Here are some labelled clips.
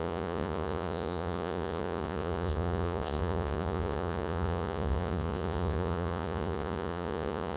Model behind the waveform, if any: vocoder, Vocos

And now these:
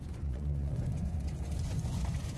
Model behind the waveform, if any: vocoder, Vocos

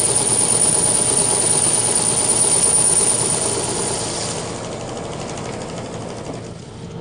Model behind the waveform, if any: none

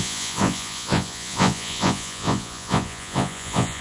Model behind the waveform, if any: vocoder, Vocos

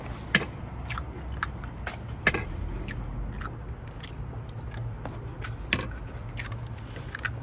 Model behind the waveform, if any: none